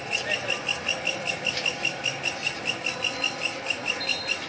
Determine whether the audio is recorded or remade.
recorded